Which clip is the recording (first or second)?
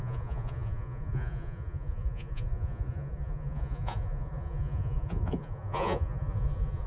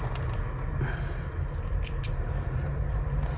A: second